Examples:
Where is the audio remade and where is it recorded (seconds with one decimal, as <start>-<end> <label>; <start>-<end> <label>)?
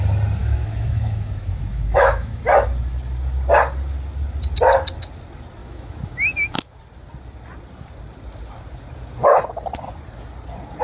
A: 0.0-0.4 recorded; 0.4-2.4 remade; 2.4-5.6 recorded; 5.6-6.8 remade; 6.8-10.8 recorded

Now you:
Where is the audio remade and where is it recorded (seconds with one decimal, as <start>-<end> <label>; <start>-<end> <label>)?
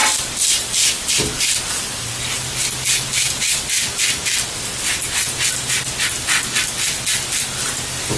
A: 0.0-1.1 remade; 1.1-8.2 recorded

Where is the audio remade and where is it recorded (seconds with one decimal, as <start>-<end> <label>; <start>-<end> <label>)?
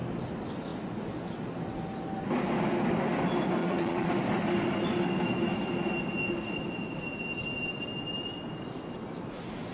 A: 0.0-3.6 recorded; 3.6-4.1 remade; 4.1-9.7 recorded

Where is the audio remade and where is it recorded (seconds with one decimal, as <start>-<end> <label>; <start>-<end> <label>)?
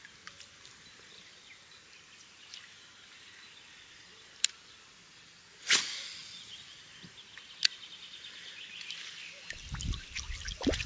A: 0.0-10.9 recorded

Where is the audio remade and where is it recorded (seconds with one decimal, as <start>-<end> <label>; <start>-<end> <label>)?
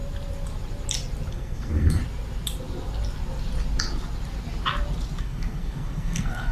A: 0.0-1.3 recorded; 1.3-2.0 remade; 2.0-5.2 recorded; 5.2-6.5 remade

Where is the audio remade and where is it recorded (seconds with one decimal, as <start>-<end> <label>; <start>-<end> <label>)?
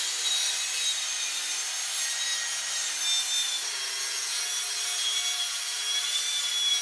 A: 0.0-1.5 remade; 1.5-5.6 recorded; 5.6-6.8 remade